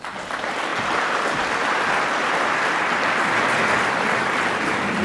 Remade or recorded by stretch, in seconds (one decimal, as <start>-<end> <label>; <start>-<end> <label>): 0.0-5.0 recorded